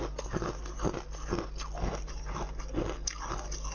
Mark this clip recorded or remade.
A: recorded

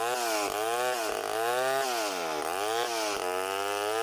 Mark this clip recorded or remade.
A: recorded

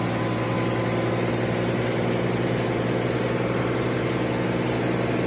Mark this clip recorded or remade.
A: recorded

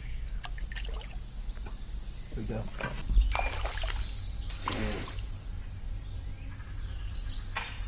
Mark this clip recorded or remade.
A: recorded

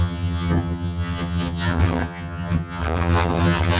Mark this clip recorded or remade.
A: remade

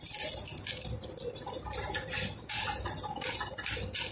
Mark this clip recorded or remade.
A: recorded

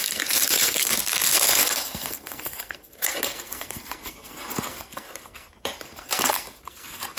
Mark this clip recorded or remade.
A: remade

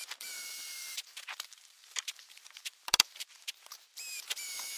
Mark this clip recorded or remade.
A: remade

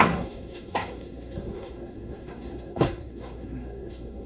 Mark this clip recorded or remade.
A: remade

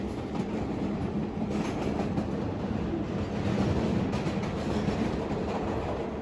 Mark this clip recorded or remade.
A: recorded